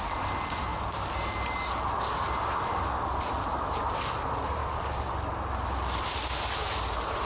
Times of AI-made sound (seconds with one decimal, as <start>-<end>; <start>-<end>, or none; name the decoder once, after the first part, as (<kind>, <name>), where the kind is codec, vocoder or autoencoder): 4.6-5.1 (codec, DAC)